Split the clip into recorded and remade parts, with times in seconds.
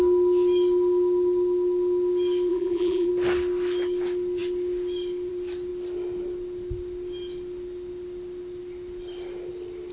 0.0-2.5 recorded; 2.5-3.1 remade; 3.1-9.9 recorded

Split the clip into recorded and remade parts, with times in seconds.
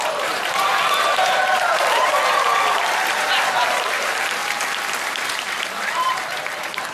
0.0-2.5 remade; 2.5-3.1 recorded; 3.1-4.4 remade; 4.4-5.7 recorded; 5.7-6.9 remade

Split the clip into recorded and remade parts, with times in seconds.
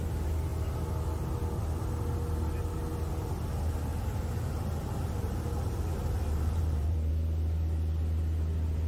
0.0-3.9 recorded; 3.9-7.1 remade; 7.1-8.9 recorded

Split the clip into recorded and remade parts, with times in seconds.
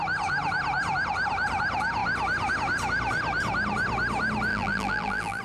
0.0-4.5 recorded; 4.5-5.4 remade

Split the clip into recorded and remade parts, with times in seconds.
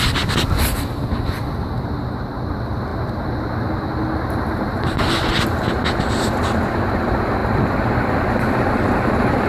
0.0-9.5 recorded